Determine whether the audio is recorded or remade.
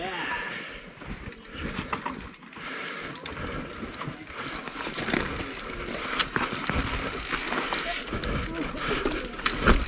recorded